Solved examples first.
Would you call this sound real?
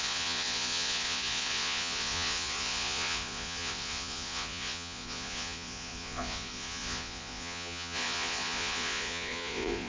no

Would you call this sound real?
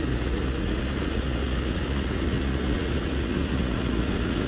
no